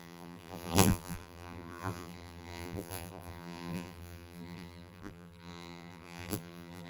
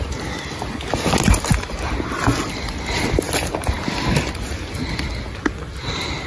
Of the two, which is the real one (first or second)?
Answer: second